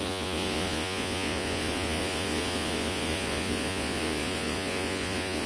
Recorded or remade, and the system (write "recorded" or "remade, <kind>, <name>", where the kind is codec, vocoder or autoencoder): remade, vocoder, Vocos